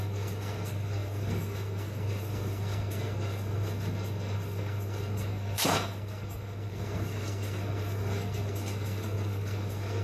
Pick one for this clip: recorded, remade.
remade